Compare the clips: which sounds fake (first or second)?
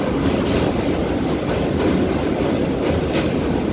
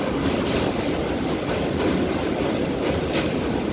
second